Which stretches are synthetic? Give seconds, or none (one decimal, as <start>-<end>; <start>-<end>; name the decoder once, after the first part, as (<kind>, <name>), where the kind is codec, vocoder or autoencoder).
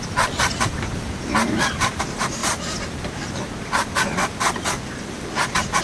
none